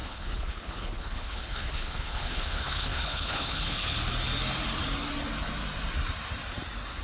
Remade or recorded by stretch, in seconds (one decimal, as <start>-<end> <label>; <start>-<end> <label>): 0.0-4.0 remade; 4.0-7.0 recorded